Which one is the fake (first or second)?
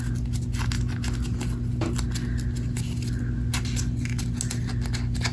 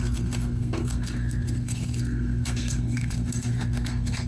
second